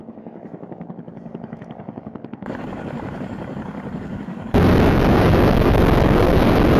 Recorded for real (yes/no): no